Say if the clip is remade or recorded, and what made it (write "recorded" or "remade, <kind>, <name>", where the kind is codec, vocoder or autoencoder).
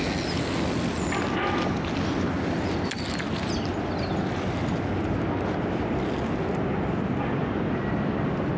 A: recorded